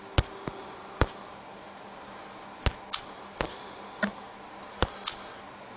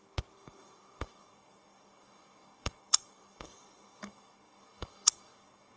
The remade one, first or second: second